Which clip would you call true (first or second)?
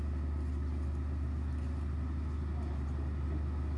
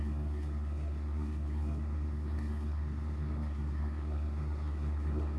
first